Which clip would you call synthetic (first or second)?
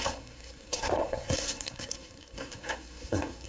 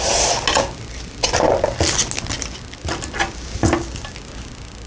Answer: first